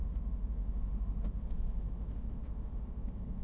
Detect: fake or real fake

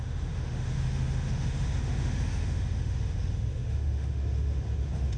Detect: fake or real fake